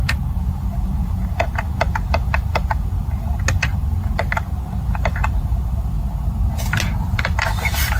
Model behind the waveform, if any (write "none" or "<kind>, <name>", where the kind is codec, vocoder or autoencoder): vocoder, BigVGAN v2